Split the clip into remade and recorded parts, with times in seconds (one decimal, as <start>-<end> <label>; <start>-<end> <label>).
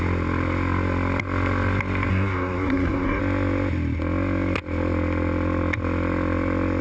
0.0-2.1 recorded; 2.1-3.2 remade; 3.2-6.8 recorded